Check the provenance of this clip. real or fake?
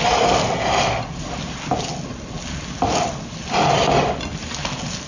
real